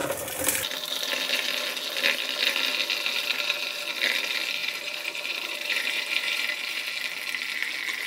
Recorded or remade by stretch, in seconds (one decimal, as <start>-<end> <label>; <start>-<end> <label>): 0.0-4.6 recorded; 4.6-6.8 remade; 6.8-8.1 recorded